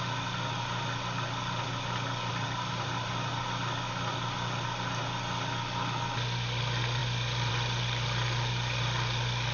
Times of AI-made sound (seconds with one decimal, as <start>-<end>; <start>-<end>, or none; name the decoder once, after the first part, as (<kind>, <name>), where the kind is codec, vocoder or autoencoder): 2.3-3.1 (vocoder, BigVGAN v2)